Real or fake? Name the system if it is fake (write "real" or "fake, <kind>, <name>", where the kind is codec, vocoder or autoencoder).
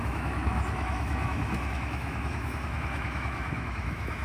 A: fake, autoencoder, DAC-VAE